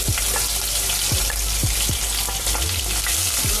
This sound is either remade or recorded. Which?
recorded